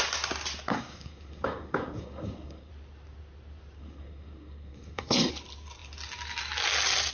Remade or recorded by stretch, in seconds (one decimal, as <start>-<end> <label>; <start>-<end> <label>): 0.0-0.7 recorded; 0.7-2.7 remade; 2.7-3.8 recorded; 3.8-5.3 remade; 5.3-7.1 recorded